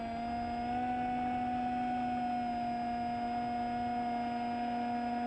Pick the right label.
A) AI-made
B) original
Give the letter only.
B